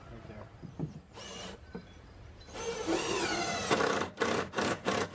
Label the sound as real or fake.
fake